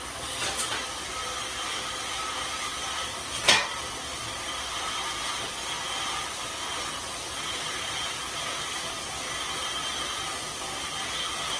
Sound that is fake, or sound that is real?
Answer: real